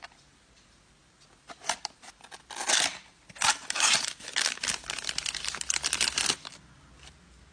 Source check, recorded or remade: recorded